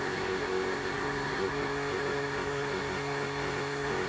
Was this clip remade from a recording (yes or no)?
yes